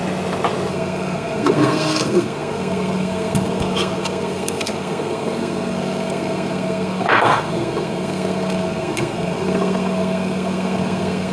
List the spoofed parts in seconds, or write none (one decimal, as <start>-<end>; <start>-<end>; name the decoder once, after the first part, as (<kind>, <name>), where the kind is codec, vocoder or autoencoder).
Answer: 0.7-11.3 (codec, SNAC)

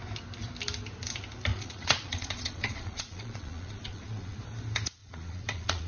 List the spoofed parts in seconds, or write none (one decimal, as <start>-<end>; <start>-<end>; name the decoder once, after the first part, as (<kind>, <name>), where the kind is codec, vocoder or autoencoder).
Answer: 1.5-4.4 (vocoder, Vocos); 5.0-5.9